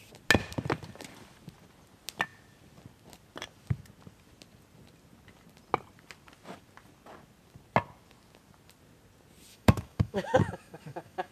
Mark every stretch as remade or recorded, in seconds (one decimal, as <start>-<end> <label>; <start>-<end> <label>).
0.0-9.5 recorded; 9.5-11.3 remade